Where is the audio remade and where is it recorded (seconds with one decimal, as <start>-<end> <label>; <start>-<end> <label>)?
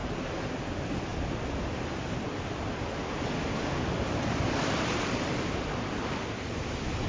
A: 0.0-7.1 recorded